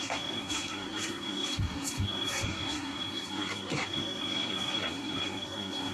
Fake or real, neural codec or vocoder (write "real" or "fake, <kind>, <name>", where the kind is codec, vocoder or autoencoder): fake, codec, SNAC